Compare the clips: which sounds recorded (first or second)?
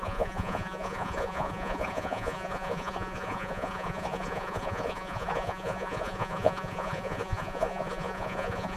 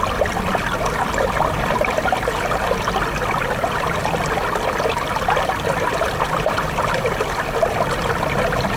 second